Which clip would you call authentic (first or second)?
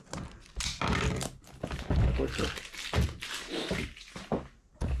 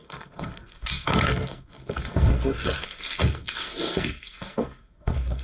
first